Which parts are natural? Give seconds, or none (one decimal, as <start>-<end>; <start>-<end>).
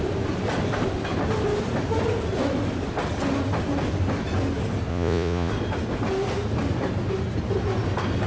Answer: 0.0-4.9; 5.5-8.3